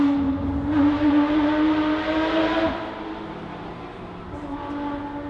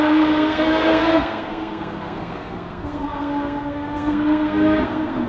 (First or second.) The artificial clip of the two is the second